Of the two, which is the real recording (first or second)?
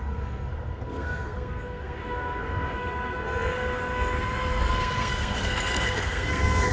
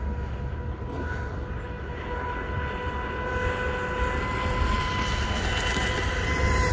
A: second